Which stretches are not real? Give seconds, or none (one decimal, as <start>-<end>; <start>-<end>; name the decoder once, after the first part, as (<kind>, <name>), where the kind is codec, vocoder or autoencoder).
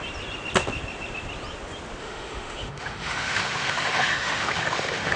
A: 2.0-5.2 (autoencoder, DAC-VAE)